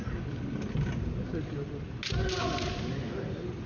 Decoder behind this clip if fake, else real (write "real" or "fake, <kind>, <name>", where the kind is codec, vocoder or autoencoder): real